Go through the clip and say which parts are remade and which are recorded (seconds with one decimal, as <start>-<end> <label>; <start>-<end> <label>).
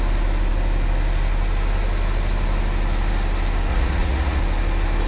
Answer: 0.0-3.7 recorded; 3.7-4.4 remade; 4.4-5.1 recorded